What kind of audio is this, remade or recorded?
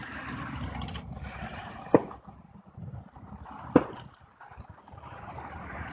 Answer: recorded